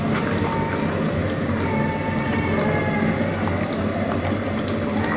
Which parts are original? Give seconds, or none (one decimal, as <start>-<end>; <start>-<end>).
0.0-5.2